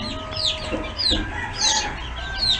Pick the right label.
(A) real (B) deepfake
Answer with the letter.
A